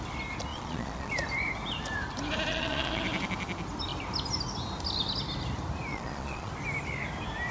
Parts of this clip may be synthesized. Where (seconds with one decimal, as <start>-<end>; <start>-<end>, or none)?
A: 0.5-1.1; 2.5-3.0; 5.9-6.5